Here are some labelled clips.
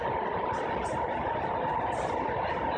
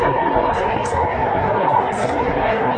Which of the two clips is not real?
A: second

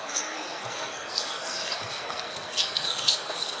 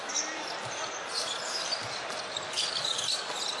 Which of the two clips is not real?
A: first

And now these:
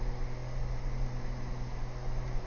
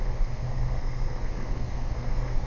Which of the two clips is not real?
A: second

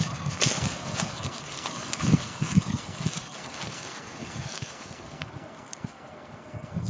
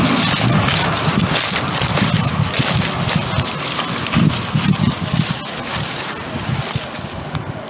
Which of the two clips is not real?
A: first